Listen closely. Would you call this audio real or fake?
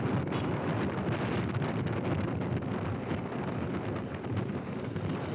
real